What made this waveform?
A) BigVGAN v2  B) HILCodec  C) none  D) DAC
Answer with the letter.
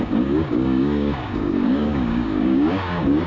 D